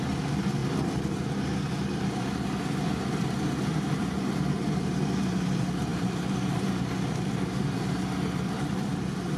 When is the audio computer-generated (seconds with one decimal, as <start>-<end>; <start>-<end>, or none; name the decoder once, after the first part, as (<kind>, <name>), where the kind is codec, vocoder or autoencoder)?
0.0-0.6 (vocoder, BigVGAN v2); 2.0-9.4